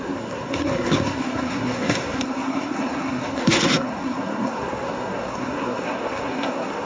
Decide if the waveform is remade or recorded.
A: remade